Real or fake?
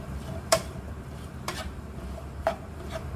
fake